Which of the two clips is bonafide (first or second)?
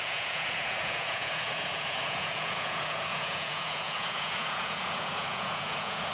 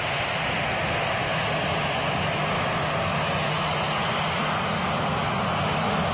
second